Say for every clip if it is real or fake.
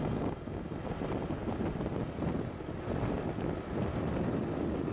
real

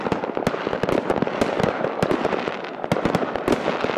real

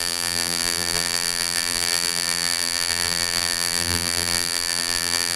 fake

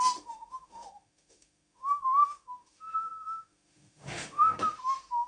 fake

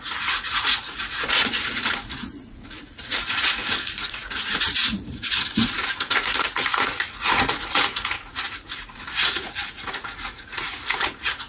fake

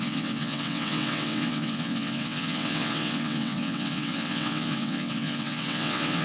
fake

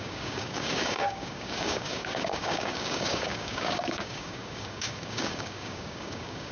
fake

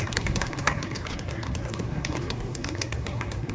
fake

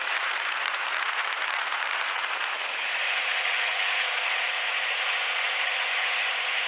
fake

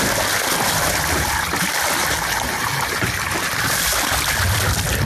real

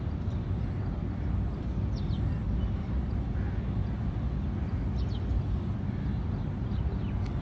real